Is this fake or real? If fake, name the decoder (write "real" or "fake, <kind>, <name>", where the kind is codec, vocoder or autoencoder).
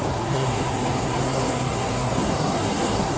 fake, codec, SNAC